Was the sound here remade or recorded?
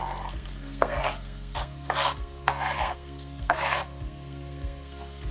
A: remade